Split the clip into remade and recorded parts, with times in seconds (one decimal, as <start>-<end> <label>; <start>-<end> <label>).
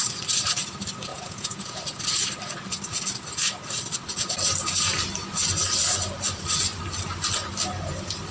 0.0-1.1 recorded; 1.1-1.8 remade; 1.8-8.3 recorded